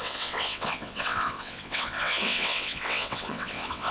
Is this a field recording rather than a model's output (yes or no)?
no